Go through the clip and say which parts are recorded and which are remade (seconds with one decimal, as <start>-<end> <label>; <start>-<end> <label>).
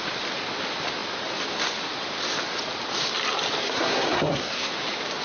0.0-3.6 recorded; 3.6-4.7 remade; 4.7-5.2 recorded